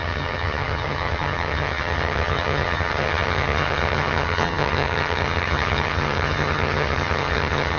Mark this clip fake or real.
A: fake